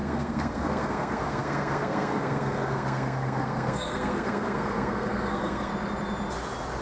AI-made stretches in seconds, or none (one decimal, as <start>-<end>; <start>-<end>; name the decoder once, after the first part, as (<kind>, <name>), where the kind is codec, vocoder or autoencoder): 0.0-5.7 (codec, SNAC)